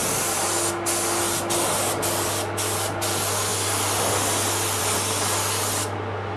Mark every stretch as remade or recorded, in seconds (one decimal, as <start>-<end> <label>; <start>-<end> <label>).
0.0-6.4 recorded